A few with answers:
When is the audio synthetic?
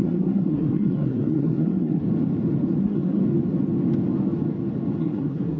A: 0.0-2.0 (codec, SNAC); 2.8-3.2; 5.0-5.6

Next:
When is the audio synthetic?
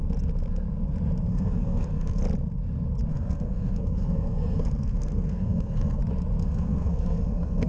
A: 1.3-2.2 (codec, SNAC); 3.1-6.0; 6.4-7.7